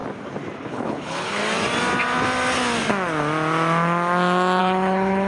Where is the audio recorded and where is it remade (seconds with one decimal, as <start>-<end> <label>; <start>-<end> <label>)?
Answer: 0.0-0.6 recorded; 0.6-1.4 remade; 1.4-4.6 recorded; 4.6-5.3 remade